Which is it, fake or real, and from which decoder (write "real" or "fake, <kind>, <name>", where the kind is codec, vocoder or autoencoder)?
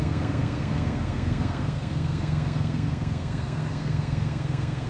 fake, codec, SNAC